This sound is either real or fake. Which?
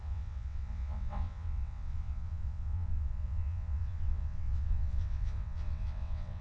fake